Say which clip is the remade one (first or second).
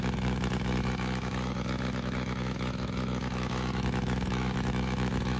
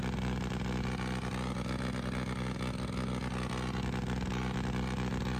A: first